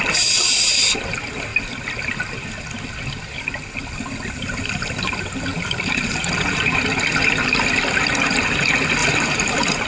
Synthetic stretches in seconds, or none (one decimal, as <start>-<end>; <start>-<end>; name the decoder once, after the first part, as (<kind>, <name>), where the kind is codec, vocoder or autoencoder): 5.5-6.8 (vocoder, BigVGAN v2); 9.0-9.9

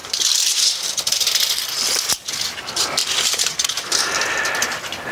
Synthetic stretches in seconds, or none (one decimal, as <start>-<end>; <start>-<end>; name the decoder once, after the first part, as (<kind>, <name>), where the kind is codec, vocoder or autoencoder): 0.0-2.3 (vocoder, BigVGAN v2); 3.0-4.2